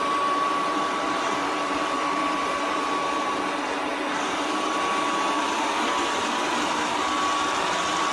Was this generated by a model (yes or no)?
no